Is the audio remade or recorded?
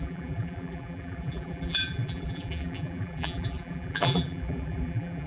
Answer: remade